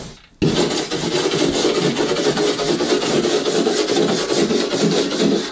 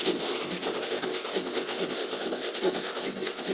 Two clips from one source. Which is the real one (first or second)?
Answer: first